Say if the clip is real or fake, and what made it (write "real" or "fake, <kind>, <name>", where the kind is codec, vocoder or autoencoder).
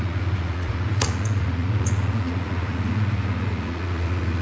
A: fake, vocoder, Vocos